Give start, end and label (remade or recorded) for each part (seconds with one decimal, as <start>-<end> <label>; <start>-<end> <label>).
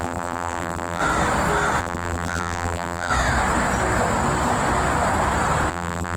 0.0-1.0 remade; 1.0-1.8 recorded; 1.8-3.1 remade; 3.1-5.7 recorded; 5.7-6.2 remade